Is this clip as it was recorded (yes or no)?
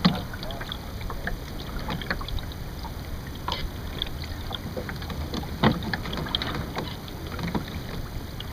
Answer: yes